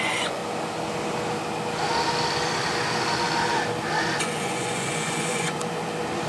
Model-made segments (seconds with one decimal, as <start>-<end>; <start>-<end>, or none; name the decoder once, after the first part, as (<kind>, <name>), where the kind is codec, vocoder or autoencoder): 0.0-0.4 (vocoder, Vocos); 4.2-5.6

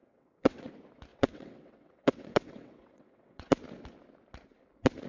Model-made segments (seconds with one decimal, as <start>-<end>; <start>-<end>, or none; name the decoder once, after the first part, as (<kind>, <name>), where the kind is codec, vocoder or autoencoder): 0.0-0.7 (vocoder, WaveNeXt); 1.1-3.5